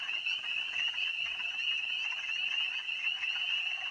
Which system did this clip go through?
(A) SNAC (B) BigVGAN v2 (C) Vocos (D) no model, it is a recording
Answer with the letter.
D